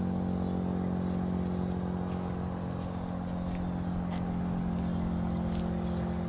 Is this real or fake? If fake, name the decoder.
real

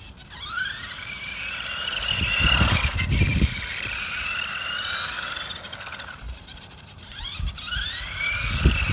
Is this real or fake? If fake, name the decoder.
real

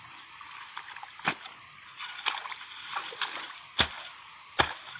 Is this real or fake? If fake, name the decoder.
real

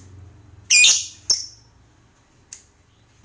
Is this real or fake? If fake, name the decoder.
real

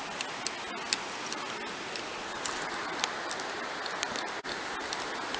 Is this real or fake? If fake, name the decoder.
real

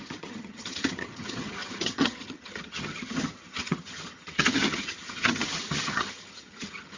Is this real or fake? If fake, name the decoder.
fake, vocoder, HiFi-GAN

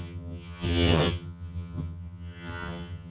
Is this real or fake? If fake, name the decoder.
fake, vocoder, HiFi-GAN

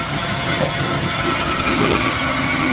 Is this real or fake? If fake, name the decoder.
fake, vocoder, HiFi-GAN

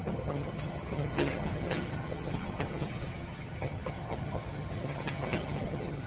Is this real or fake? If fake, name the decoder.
fake, vocoder, HiFi-GAN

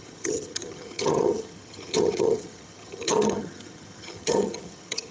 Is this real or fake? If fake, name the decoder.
fake, vocoder, HiFi-GAN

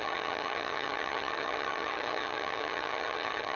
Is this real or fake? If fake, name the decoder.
fake, vocoder, HiFi-GAN